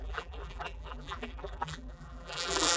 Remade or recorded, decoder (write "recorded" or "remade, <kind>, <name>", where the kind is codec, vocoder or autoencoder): remade, vocoder, BigVGAN v2